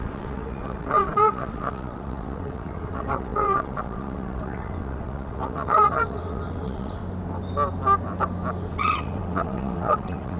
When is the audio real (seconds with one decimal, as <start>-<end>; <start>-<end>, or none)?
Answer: 7.0-8.7